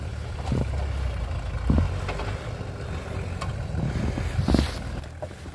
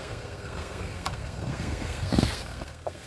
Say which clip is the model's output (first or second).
second